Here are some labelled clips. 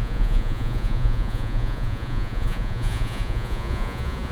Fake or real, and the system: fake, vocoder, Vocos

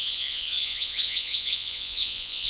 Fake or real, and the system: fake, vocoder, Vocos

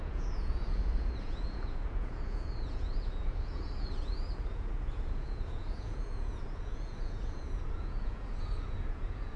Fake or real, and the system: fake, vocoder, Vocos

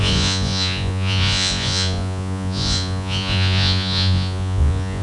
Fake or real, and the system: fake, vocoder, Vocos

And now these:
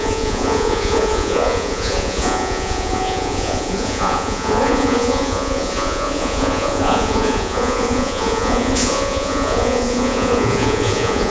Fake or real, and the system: fake, vocoder, Vocos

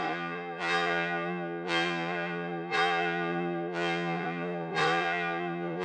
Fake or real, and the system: fake, vocoder, Vocos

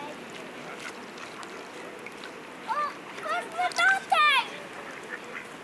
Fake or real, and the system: real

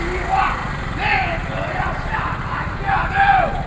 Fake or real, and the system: real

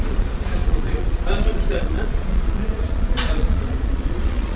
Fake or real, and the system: fake, vocoder, Vocos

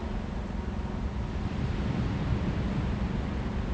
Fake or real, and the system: real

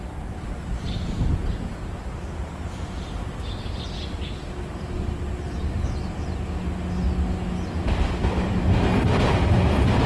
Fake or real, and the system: real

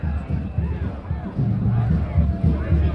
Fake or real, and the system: real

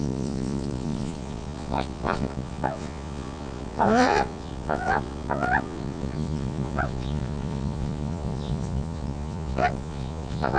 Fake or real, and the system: fake, vocoder, Vocos